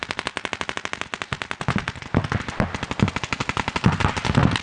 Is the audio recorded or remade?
recorded